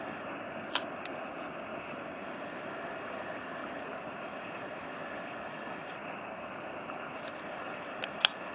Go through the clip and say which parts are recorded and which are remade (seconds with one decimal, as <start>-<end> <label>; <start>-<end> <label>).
0.0-8.5 recorded